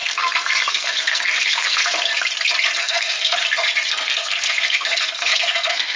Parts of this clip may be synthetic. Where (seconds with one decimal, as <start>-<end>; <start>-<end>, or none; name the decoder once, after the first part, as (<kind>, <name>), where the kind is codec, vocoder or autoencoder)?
0.0-2.1 (codec, SNAC); 2.8-3.4; 3.9-6.0